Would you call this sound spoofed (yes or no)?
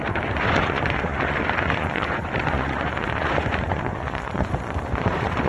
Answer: yes